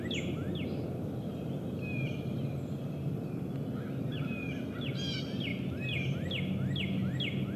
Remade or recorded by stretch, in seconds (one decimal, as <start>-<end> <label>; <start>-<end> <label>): 0.0-7.6 recorded